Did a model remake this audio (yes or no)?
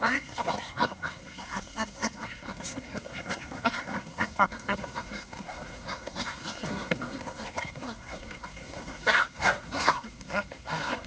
yes